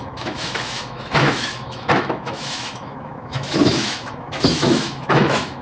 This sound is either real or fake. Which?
fake